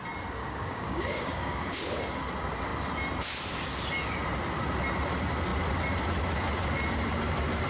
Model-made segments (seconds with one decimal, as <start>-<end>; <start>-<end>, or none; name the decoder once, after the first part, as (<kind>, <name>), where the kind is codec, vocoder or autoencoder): 0.4-1.8 (codec, DAC)